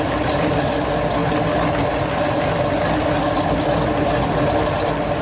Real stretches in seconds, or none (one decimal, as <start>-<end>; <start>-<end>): 0.0-5.2